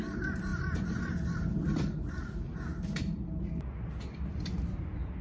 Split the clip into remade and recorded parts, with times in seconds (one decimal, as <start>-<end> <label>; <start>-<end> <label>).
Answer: 0.0-5.2 recorded